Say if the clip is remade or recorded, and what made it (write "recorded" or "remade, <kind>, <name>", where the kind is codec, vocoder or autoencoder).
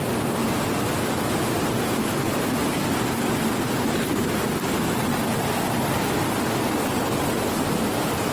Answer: recorded